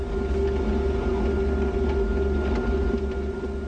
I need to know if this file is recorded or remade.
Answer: recorded